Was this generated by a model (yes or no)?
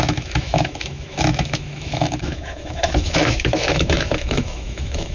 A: yes